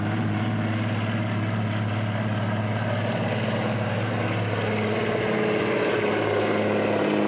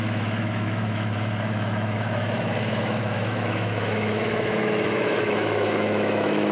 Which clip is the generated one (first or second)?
second